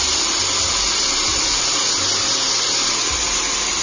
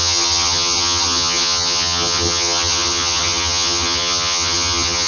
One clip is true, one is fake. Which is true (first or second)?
first